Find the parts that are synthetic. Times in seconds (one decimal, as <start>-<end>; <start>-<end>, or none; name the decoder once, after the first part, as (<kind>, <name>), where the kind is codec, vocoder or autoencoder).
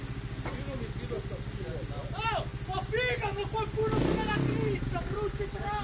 none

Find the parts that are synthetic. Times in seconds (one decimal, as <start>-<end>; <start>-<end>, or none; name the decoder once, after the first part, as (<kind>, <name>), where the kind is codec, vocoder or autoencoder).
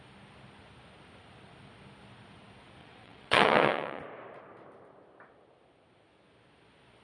2.8-4.0 (vocoder, WaveNeXt)